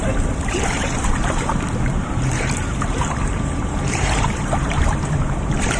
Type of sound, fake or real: fake